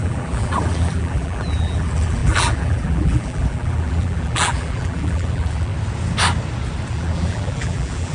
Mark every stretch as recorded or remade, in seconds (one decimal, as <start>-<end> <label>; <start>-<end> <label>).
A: 0.0-5.7 remade; 5.7-6.9 recorded; 6.9-8.1 remade